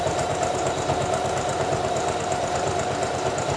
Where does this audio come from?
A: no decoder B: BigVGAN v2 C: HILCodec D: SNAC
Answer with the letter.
B